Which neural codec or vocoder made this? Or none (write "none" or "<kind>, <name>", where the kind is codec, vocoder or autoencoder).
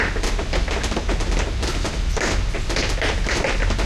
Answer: none